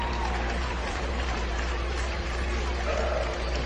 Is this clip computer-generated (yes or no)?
yes